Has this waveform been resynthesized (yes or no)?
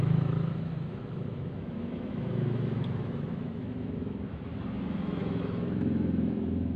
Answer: yes